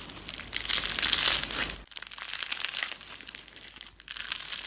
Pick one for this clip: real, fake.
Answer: real